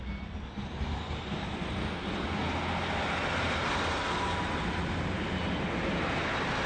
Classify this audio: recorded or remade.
recorded